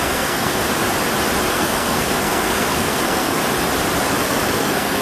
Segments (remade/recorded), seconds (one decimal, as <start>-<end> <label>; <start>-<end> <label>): 0.0-0.6 remade; 0.6-1.5 recorded; 1.5-3.4 remade; 3.4-4.1 recorded; 4.1-5.0 remade